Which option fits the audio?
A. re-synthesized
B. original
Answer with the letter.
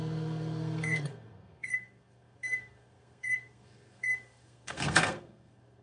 A